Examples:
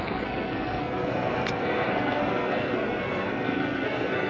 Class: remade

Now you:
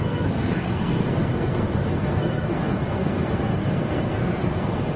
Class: remade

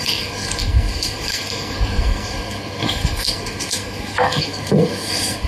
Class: remade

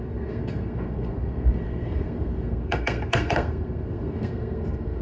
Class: remade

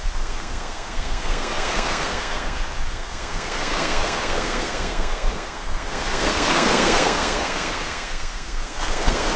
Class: remade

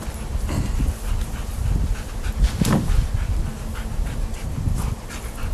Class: recorded